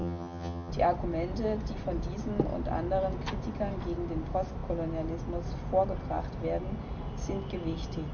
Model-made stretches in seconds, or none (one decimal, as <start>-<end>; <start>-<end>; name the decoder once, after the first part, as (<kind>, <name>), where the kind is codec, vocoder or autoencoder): 0.0-0.7 (vocoder, HiFi-GAN)